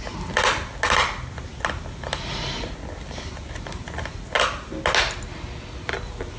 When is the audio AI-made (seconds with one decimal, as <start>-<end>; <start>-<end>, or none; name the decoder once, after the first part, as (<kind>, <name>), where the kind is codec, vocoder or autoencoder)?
none